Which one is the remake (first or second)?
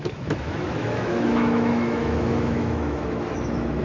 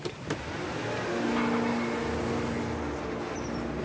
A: first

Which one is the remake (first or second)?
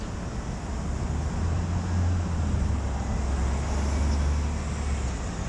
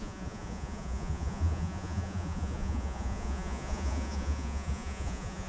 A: second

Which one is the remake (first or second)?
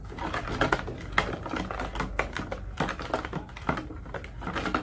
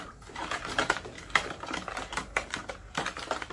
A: second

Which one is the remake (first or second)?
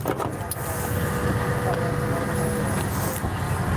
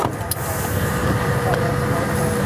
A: second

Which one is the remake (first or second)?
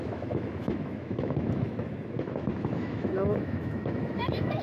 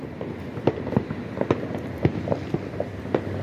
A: first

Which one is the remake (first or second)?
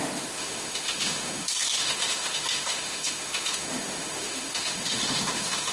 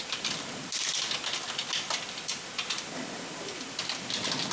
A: first